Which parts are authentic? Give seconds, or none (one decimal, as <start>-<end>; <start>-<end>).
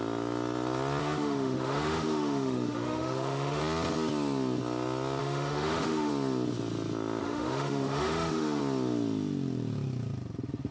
0.0-1.0; 3.6-5.2; 6.1-7.2; 8.6-10.7